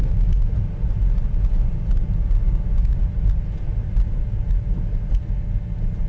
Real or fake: real